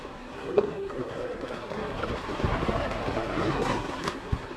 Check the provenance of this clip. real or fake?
fake